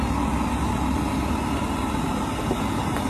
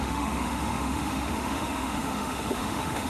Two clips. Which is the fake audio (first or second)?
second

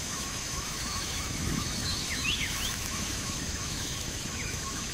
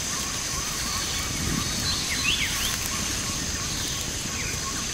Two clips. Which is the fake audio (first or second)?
first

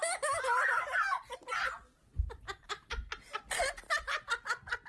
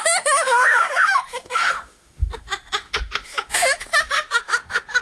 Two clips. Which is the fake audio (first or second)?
second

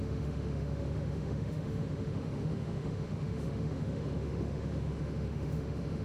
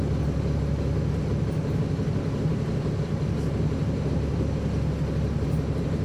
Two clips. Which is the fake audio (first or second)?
first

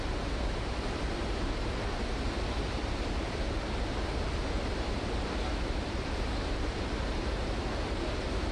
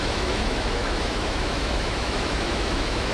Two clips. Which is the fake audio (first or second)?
second